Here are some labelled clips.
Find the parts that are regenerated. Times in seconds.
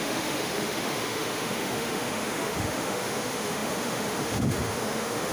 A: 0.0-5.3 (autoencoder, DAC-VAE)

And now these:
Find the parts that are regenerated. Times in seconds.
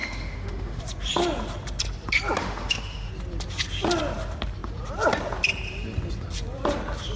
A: 0.0-0.8 (autoencoder, DAC-VAE); 2.4-3.1